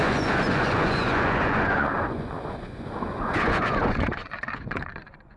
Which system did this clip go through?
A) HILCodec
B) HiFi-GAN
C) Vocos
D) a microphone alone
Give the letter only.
C